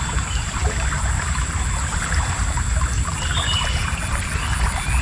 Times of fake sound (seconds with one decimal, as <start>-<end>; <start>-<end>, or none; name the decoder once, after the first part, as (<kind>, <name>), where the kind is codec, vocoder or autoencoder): none